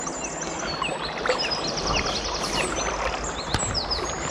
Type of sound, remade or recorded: recorded